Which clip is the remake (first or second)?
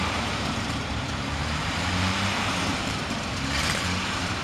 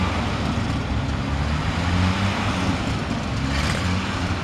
first